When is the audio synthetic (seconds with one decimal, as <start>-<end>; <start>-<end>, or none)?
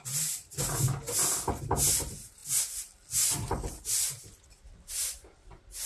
none